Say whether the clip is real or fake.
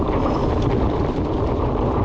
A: real